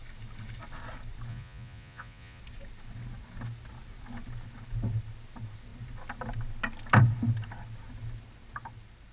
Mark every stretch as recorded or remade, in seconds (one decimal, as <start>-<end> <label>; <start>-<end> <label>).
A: 0.0-1.3 recorded; 1.3-2.4 remade; 2.4-9.1 recorded